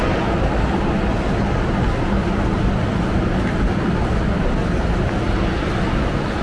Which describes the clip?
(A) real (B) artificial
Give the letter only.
A